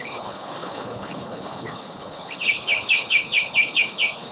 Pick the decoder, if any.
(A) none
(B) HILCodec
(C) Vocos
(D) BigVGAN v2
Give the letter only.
B